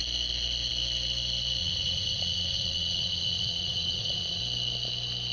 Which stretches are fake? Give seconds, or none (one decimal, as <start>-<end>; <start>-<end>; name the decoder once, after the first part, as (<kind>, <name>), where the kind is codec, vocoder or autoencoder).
1.6-4.4 (vocoder, Vocos)